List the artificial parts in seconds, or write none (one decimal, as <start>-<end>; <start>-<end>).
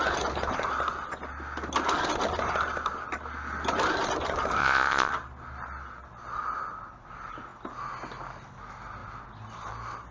4.6-5.1